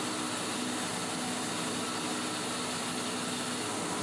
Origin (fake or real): real